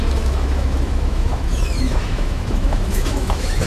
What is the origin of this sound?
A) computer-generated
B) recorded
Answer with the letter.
A